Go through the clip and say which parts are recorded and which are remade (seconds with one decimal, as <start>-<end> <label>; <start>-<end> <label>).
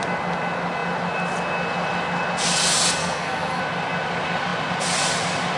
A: 0.0-3.0 recorded; 3.0-3.6 remade; 3.6-5.6 recorded